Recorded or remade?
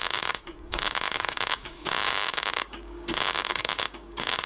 remade